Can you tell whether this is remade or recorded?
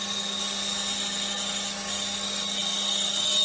recorded